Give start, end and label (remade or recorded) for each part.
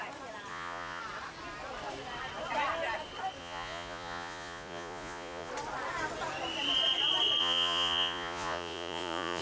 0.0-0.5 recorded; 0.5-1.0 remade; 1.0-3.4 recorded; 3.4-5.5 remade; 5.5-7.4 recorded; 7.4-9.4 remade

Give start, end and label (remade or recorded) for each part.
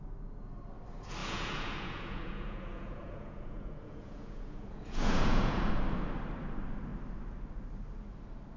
0.0-1.2 recorded; 1.2-5.7 remade; 5.7-8.6 recorded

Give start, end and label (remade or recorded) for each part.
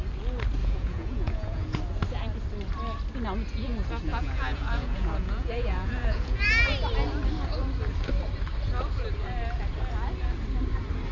0.0-0.6 recorded; 0.6-1.8 remade; 1.8-4.1 recorded; 4.1-6.5 remade; 6.5-11.1 recorded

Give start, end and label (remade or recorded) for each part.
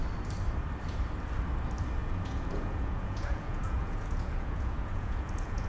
0.0-2.0 recorded; 2.0-5.7 remade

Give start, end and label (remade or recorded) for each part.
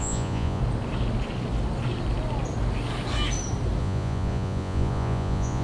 0.0-0.6 remade; 0.6-3.8 recorded; 3.8-5.6 remade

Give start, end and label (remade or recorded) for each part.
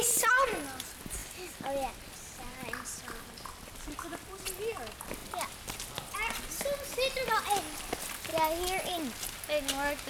0.0-10.1 recorded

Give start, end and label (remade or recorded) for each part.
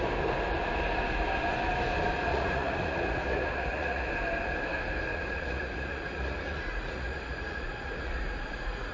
0.0-2.3 recorded; 2.3-4.1 remade; 4.1-5.1 recorded; 5.1-8.9 remade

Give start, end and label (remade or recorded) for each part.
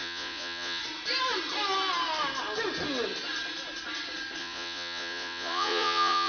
0.0-0.8 remade; 0.8-4.4 recorded; 4.4-6.3 remade